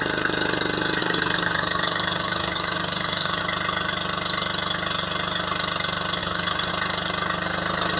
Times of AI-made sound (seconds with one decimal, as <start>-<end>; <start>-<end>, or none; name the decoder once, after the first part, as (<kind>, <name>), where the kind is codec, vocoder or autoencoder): 1.0-3.4 (codec, DAC); 6.2-6.7